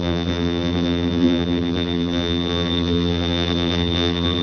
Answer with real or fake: fake